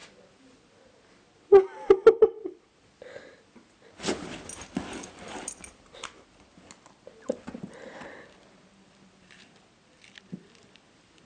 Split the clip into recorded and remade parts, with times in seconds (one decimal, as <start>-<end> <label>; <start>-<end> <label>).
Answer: 0.0-11.3 recorded